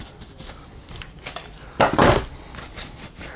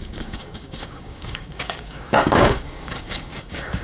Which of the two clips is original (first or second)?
first